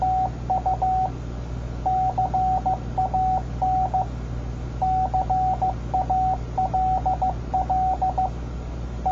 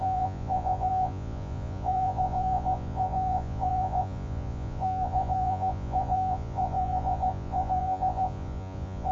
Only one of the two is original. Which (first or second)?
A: first